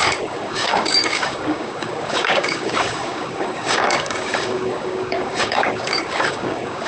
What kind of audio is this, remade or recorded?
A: remade